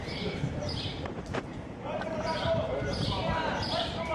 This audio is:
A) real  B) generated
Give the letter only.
B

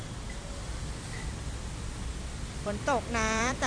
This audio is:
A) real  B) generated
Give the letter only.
B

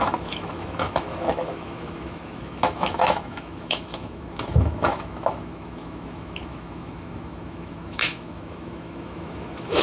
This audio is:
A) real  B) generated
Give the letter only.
B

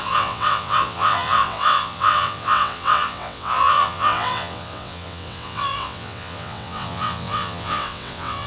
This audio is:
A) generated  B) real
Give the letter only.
A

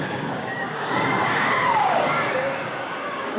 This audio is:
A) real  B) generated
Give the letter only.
B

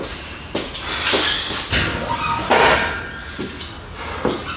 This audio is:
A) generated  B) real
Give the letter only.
B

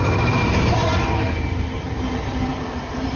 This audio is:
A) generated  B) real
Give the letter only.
A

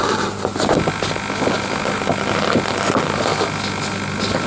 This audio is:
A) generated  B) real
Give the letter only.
B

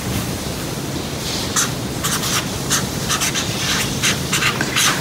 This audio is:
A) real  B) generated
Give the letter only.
B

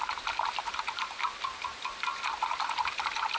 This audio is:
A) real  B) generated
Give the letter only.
A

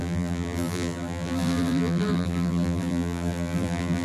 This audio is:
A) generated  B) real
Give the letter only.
A